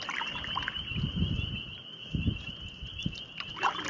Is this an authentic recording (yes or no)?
yes